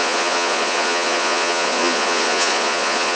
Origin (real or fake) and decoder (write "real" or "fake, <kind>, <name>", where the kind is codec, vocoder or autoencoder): fake, vocoder, Vocos